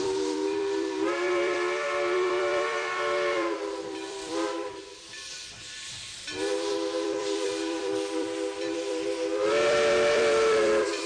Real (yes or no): no